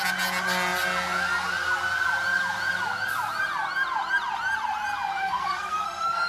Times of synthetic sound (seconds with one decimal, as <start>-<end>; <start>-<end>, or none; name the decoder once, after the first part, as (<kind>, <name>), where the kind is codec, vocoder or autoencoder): 5.2-6.3 (codec, SNAC)